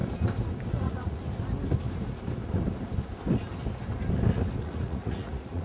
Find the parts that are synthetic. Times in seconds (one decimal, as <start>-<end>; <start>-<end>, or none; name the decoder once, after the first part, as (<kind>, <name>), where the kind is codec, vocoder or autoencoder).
0.7-1.2 (vocoder, Vocos); 4.6-5.6